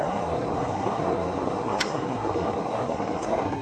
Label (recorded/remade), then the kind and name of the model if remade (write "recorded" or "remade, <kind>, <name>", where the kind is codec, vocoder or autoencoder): remade, codec, SNAC